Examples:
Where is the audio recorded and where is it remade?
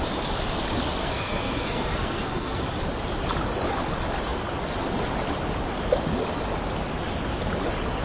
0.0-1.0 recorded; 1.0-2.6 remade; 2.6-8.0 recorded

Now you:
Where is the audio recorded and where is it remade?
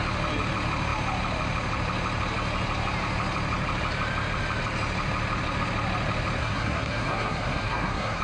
0.0-6.4 recorded; 6.4-8.2 remade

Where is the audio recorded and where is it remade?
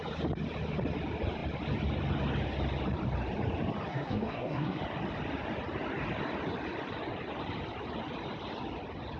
0.0-3.9 recorded; 3.9-4.8 remade; 4.8-9.2 recorded